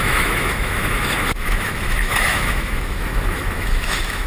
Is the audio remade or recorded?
remade